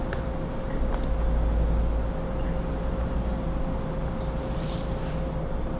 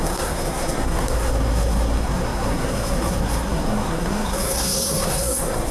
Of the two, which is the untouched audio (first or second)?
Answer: first